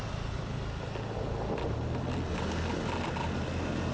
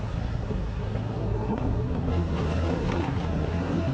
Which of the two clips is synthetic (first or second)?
second